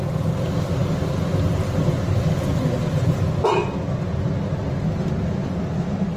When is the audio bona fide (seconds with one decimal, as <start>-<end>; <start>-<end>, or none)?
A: 0.0-6.2